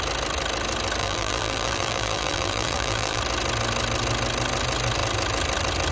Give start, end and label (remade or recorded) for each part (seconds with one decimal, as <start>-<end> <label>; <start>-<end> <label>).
0.0-1.0 recorded; 1.0-3.2 remade; 3.2-5.9 recorded